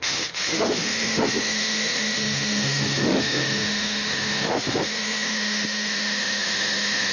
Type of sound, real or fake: fake